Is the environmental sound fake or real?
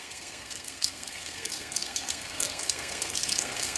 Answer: fake